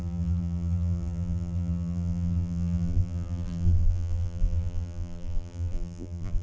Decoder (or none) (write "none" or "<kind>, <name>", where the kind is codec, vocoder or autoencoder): vocoder, BigVGAN v2